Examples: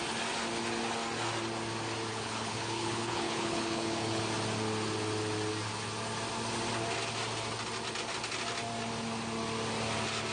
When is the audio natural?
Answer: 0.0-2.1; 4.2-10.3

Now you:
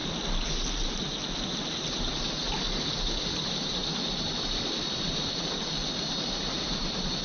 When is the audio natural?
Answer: 0.0-3.4; 3.8-5.0; 5.8-6.4

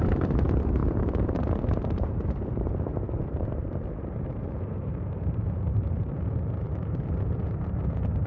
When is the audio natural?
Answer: none

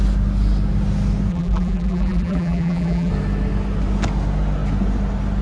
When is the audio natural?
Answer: 0.0-1.3; 3.1-5.4

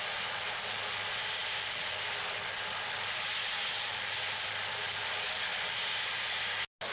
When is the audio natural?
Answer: 0.0-6.9

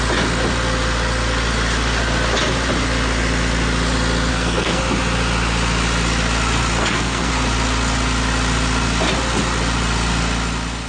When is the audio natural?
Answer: 0.0-4.3; 4.8-6.8; 7.3-10.9